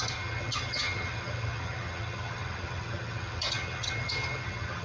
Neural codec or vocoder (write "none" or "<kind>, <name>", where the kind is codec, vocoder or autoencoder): vocoder, HiFi-GAN